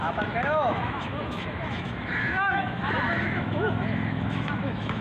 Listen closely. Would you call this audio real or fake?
fake